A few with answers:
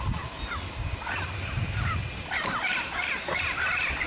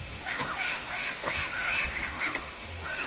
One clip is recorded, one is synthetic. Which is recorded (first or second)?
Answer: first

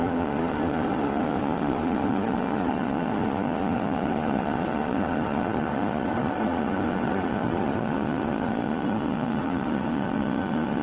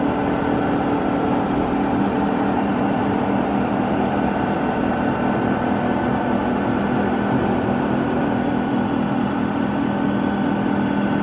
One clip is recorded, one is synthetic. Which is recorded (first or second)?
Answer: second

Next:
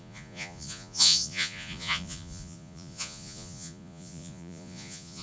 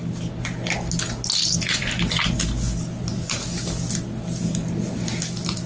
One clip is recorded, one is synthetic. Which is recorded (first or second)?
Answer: second